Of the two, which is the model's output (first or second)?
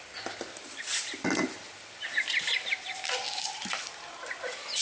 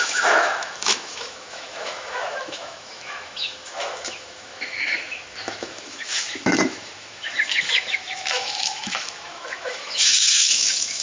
second